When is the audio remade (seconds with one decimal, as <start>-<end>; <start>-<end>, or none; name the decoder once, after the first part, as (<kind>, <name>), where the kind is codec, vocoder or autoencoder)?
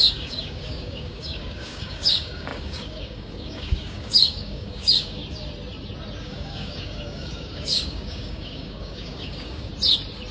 0.0-5.2 (codec, DAC); 6.2-9.7